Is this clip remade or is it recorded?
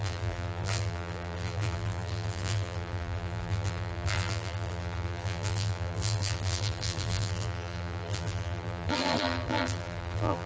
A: remade